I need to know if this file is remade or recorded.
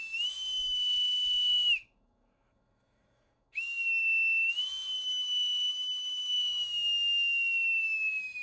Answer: remade